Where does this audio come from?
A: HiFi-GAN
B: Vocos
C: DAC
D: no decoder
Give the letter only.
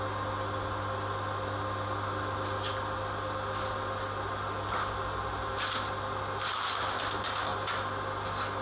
D